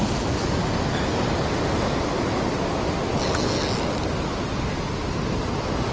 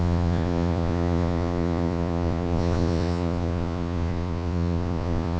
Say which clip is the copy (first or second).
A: second